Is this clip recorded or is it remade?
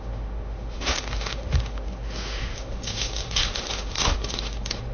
remade